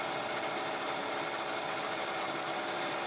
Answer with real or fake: fake